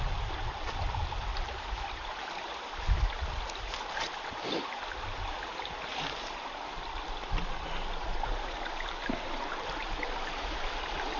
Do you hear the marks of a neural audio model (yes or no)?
yes